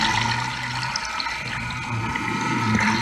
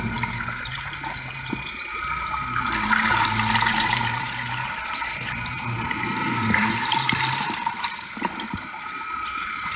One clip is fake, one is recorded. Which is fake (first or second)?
second